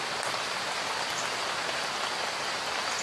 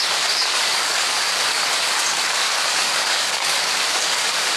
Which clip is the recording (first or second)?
first